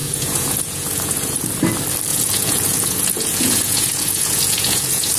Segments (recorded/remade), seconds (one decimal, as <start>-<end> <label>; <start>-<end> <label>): 0.0-1.5 remade; 1.5-2.1 recorded; 2.1-5.2 remade